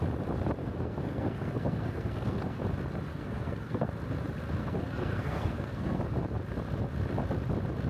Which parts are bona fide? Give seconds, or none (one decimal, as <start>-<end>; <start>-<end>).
0.0-0.6; 2.6-3.1; 3.9-4.6; 6.0-7.9